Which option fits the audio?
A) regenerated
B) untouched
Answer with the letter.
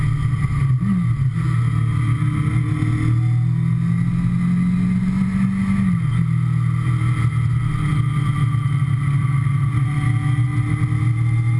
B